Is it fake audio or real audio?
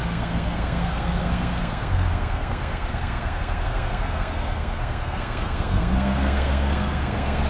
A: fake